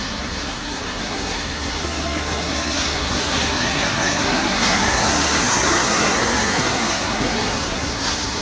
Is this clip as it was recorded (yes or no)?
no